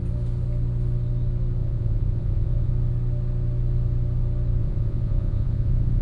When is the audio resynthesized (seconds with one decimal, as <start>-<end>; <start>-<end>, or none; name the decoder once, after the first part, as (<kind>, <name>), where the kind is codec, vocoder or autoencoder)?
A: 1.6-2.7 (vocoder, Vocos); 4.6-6.0